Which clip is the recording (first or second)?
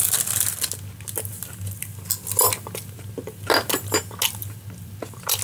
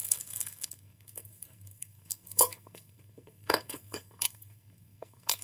first